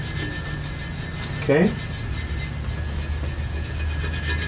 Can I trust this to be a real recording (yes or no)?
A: yes